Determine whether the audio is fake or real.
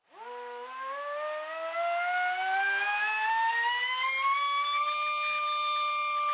real